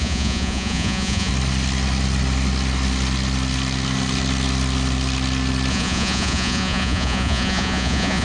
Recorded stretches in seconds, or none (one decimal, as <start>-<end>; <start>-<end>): 1.3-5.7

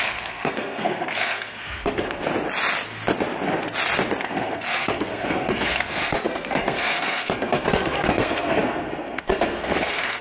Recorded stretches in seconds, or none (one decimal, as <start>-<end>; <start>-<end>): 2.3-4.2

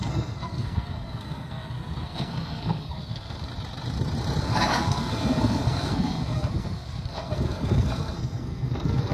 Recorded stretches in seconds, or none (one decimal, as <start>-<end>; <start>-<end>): 3.5-4.4

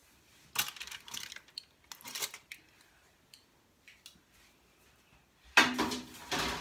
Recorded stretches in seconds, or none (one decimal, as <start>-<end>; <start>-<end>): 0.0-6.6